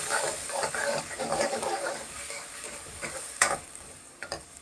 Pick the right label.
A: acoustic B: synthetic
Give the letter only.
B